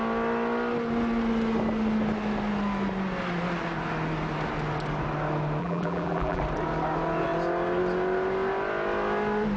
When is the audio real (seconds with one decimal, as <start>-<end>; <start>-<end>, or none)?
0.0-5.6; 6.4-9.6